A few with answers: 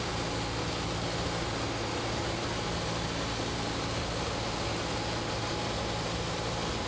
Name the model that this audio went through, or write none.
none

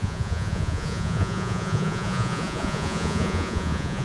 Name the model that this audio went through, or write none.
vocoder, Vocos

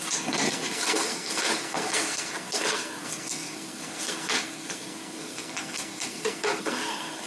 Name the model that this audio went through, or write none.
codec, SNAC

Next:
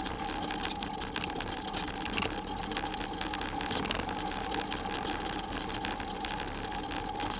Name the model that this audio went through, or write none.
none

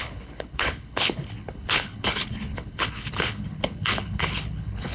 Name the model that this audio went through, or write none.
codec, HILCodec